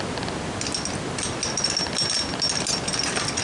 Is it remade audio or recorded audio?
recorded